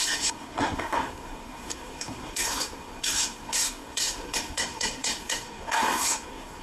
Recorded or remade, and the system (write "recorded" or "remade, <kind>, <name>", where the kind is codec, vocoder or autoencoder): remade, codec, SNAC